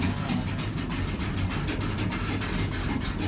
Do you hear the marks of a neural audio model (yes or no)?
no